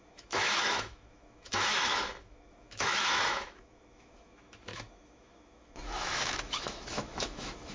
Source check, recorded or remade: remade